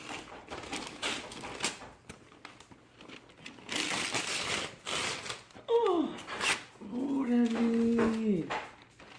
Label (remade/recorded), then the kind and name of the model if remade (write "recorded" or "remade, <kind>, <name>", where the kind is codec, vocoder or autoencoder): recorded